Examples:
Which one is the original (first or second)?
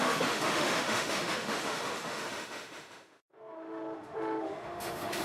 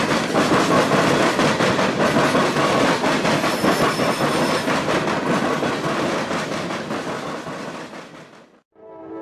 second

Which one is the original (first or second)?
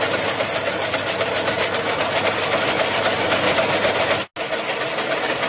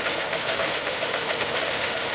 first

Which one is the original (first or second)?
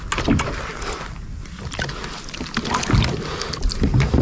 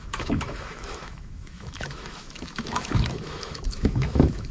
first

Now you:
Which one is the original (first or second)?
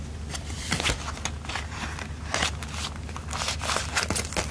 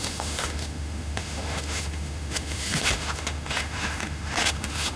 first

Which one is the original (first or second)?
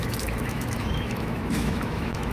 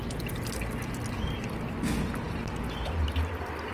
second